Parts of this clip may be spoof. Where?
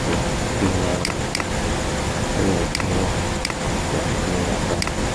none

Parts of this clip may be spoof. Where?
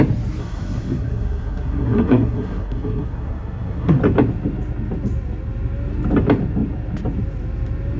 0.4-4.0 (codec, SNAC)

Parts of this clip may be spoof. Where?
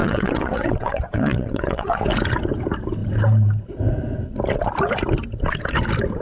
0.0-2.0 (vocoder, WaveNeXt)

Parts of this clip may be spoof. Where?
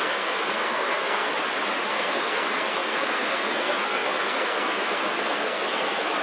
0.0-1.3 (codec, SNAC); 1.9-6.2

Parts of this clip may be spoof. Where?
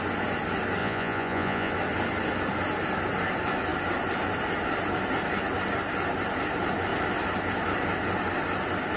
0.8-1.7 (vocoder, Vocos)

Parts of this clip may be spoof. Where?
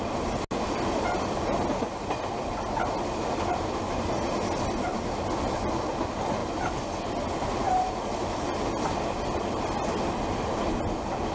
none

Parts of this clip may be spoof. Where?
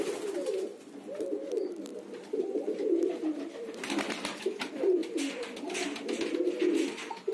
none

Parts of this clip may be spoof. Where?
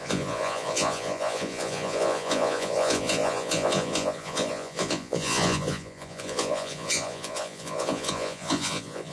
0.0-9.1 (vocoder, Vocos)